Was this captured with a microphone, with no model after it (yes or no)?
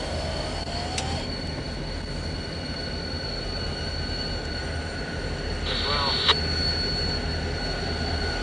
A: yes